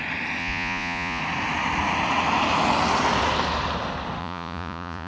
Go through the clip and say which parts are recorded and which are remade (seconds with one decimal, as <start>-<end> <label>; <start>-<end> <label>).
0.0-0.4 recorded; 0.4-1.2 remade; 1.2-4.2 recorded; 4.2-5.1 remade